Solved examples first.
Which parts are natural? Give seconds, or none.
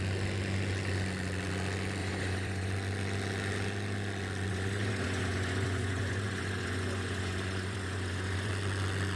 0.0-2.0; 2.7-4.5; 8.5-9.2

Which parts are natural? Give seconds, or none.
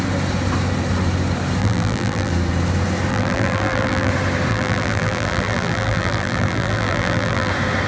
0.0-1.6; 2.3-3.1; 4.1-4.5; 7.5-7.9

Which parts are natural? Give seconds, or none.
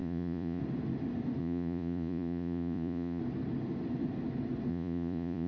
0.6-1.4; 3.2-4.7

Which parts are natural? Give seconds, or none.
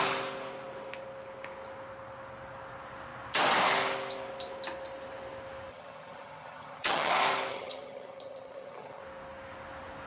0.0-5.7; 7.1-7.5; 9.0-10.1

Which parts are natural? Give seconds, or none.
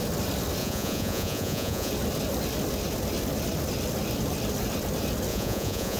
0.0-0.6; 1.9-5.3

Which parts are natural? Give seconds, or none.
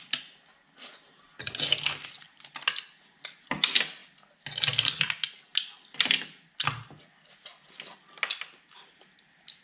0.0-9.6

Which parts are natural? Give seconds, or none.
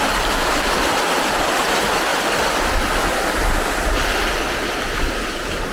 0.0-5.7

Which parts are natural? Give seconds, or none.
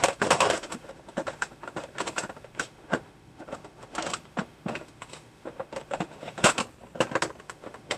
6.6-7.4